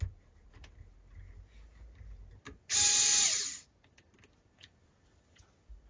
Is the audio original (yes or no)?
yes